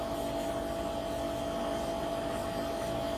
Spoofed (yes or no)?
no